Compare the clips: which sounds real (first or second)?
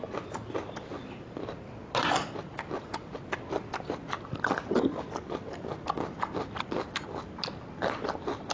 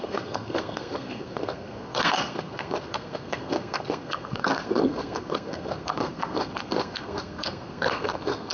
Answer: first